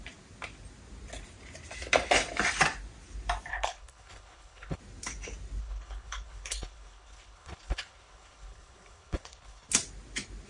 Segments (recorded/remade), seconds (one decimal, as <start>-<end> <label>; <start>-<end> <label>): 0.0-3.5 recorded; 3.5-4.8 remade; 4.8-5.6 recorded; 5.6-9.7 remade; 9.7-10.5 recorded